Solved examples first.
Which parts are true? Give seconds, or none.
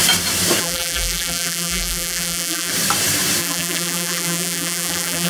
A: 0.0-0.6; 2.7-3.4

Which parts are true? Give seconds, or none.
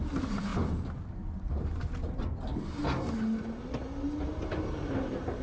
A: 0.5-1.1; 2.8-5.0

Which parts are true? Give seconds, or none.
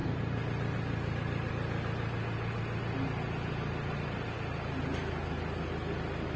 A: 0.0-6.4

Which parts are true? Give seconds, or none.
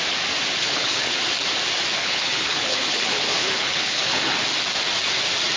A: 0.0-0.6; 1.2-2.0; 4.4-5.6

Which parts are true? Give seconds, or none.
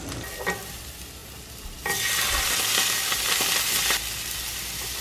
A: 0.0-5.0